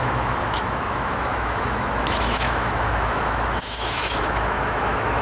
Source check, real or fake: fake